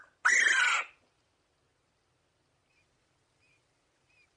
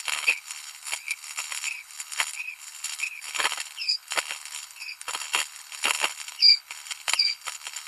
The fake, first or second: second